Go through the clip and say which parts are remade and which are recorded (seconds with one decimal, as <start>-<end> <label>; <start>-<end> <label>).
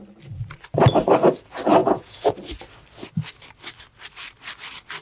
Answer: 0.0-1.8 recorded; 1.8-2.3 remade; 2.3-5.0 recorded